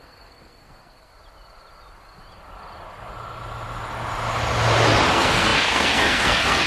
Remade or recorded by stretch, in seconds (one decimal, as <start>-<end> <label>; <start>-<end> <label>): 0.0-1.1 remade; 1.1-5.1 recorded; 5.1-6.7 remade